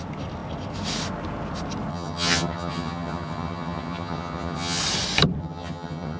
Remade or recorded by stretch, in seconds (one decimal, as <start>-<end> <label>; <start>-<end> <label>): 0.0-1.9 recorded; 1.9-4.8 remade; 4.8-5.4 recorded; 5.4-6.2 remade